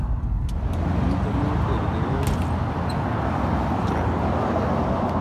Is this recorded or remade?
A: recorded